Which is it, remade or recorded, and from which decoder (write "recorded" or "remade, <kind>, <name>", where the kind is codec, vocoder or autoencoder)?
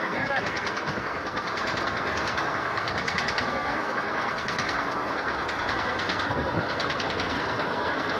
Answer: remade, codec, SNAC